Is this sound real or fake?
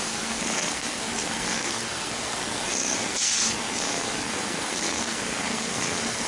fake